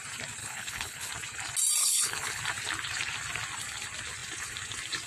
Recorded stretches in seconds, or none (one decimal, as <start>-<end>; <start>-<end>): 0.0-0.4; 1.1-1.8; 2.4-5.1

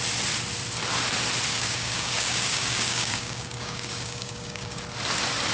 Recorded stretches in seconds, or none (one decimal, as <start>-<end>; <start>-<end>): 0.0-1.5; 4.8-5.5

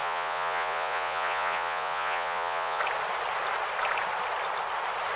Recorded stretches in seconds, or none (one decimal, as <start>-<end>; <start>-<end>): 2.8-5.2

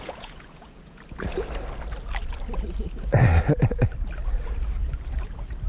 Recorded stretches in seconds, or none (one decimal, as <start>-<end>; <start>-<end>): 1.0-5.7

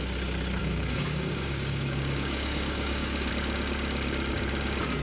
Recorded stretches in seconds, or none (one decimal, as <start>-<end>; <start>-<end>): 0.0-0.6; 3.3-5.0

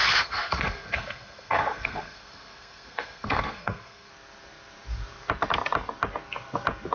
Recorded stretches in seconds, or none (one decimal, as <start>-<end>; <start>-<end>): 4.1-6.9

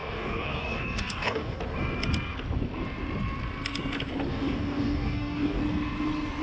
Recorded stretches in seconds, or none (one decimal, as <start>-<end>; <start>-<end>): 1.6-4.3; 5.6-6.4